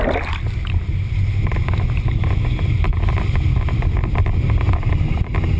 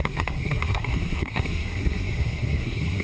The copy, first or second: second